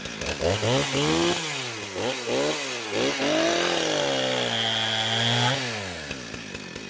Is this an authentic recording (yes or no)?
yes